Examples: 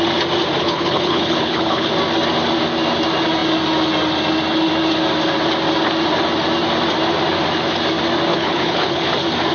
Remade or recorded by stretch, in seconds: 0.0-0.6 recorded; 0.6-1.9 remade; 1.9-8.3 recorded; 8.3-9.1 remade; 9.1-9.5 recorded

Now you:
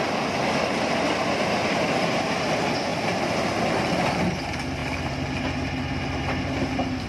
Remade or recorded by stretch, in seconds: 0.0-7.1 recorded

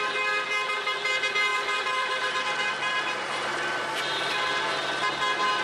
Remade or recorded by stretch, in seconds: 0.0-1.5 recorded; 1.5-4.3 remade; 4.3-5.6 recorded

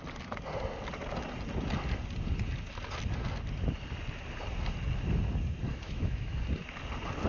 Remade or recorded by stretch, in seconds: 0.0-5.7 recorded; 5.7-6.4 remade; 6.4-7.3 recorded